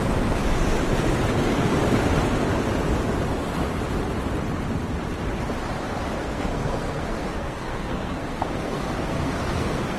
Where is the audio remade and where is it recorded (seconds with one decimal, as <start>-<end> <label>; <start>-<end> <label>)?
0.0-6.2 recorded; 6.2-10.0 remade